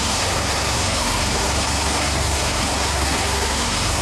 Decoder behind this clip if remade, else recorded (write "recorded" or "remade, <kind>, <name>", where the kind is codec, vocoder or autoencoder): remade, codec, SNAC